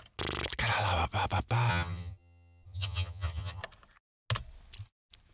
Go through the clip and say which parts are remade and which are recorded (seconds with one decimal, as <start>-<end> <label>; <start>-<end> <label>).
0.0-1.7 recorded; 1.7-3.6 remade; 3.6-5.3 recorded